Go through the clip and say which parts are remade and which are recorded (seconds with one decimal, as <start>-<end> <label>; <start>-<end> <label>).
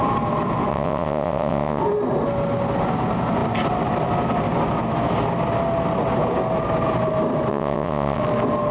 0.0-0.7 recorded; 0.7-1.8 remade; 1.8-7.5 recorded; 7.5-8.2 remade; 8.2-8.7 recorded